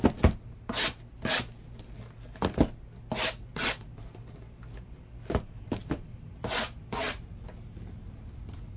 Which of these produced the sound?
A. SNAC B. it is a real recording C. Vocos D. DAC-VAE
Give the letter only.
B